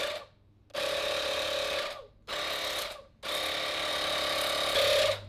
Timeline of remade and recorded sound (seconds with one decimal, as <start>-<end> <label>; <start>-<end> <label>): 0.0-5.3 recorded